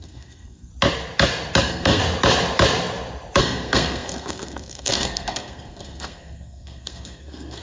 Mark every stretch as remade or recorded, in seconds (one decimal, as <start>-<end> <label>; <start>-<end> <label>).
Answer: 0.0-0.7 remade; 0.7-1.6 recorded; 1.6-2.0 remade; 2.0-3.4 recorded; 3.4-7.6 remade